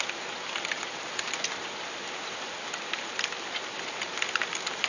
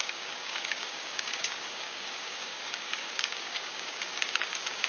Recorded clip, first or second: first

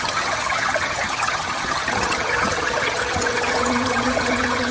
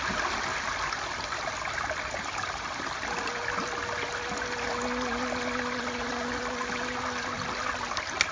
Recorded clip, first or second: second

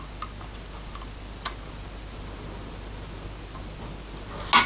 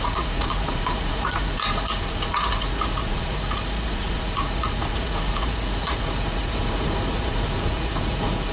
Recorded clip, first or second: first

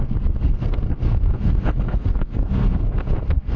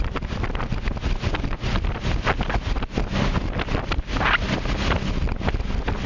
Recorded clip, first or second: second